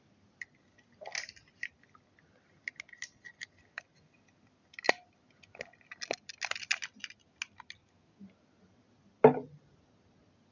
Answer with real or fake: real